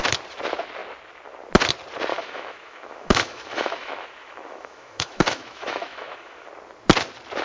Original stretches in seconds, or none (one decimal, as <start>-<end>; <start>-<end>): 0.0-2.1; 6.5-7.4